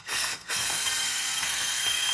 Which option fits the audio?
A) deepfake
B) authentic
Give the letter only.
A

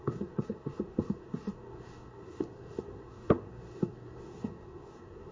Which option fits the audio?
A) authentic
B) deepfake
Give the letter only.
B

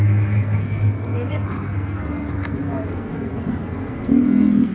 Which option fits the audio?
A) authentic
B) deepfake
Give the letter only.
B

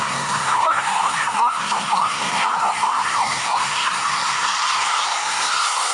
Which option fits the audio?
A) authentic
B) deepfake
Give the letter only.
B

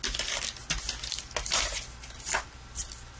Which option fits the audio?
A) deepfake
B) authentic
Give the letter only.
B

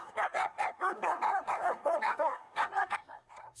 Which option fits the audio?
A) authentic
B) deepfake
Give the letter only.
B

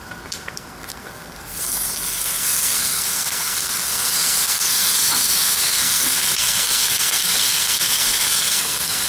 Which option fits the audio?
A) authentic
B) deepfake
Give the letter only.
B